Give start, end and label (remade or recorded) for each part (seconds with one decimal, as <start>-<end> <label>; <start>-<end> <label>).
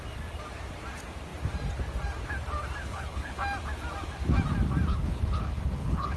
0.0-2.8 recorded; 2.8-3.4 remade; 3.4-4.9 recorded; 4.9-6.2 remade